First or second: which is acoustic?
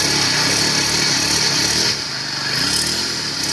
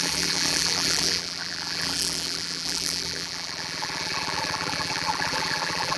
first